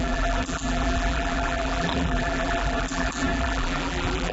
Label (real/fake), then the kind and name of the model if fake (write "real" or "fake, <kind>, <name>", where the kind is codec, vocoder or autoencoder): fake, vocoder, BigVGAN v2